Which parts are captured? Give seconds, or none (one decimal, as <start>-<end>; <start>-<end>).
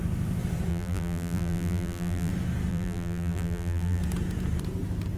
0.0-0.7; 2.3-2.7; 4.0-5.2